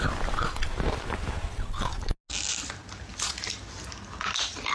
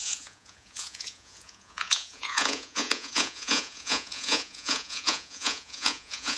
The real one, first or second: first